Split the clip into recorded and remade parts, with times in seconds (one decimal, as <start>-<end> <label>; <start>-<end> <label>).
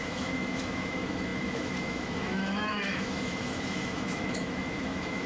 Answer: 0.0-5.3 remade